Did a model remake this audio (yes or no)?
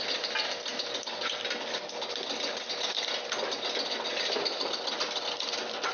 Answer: no